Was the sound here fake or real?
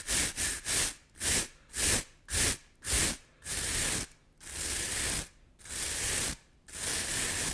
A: real